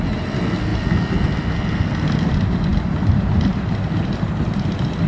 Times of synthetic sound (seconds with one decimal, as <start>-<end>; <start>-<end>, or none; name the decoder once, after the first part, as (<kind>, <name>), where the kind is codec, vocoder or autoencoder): none